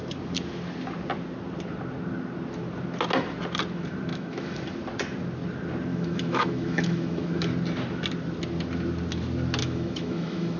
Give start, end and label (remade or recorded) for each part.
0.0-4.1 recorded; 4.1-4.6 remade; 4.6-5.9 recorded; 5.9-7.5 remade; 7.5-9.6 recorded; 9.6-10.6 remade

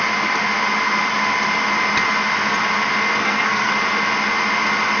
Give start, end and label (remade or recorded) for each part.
0.0-3.2 recorded; 3.2-3.7 remade; 3.7-5.0 recorded